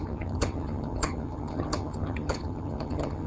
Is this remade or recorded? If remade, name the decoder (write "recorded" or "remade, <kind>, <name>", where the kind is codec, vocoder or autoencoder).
remade, vocoder, HiFi-GAN